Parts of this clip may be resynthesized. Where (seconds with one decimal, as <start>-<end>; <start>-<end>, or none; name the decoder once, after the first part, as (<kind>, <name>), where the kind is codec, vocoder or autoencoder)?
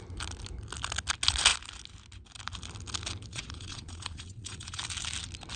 3.3-4.8 (vocoder, Vocos)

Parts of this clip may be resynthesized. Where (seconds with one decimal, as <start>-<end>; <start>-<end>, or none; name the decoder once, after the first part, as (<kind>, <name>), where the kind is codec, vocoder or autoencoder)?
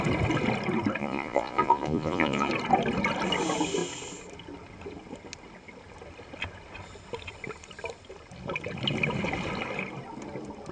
1.0-2.5 (vocoder, Vocos)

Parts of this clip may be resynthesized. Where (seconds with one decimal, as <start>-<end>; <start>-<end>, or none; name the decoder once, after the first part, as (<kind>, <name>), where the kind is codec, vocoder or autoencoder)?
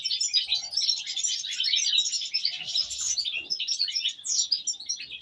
none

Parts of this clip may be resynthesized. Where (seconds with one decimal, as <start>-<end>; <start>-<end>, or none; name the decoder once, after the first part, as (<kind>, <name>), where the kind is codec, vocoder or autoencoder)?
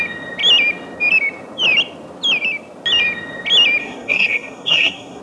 3.8-5.2 (codec, SNAC)